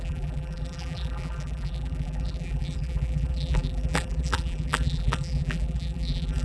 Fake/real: fake